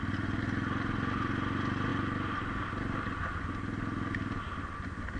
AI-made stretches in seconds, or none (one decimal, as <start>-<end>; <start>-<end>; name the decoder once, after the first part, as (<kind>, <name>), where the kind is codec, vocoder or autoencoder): none